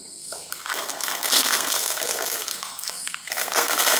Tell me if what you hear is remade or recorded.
remade